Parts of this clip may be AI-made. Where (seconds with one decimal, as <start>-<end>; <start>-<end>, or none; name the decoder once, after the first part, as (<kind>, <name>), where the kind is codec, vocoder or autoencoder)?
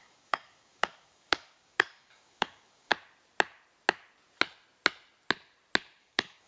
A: 0.0-2.9 (codec, DAC); 6.0-6.5